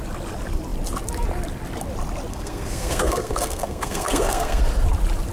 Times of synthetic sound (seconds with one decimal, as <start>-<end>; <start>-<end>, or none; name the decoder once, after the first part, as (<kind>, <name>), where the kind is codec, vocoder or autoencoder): 2.3-4.6 (codec, SNAC)